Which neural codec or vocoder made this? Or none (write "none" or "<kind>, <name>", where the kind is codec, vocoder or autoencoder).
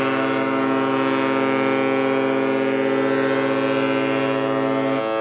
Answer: none